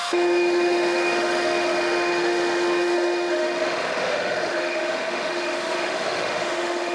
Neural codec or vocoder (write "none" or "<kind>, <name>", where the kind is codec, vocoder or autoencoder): autoencoder, DAC-VAE